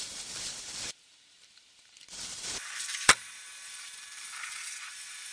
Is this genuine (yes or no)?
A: no